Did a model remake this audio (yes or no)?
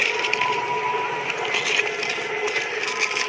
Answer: no